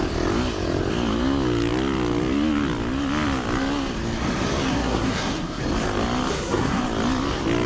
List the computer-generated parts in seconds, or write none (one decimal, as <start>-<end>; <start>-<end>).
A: 4.7-5.6; 6.3-6.8